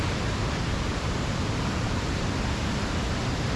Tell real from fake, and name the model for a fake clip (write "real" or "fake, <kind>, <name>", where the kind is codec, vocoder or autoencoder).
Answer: fake, vocoder, BigVGAN v2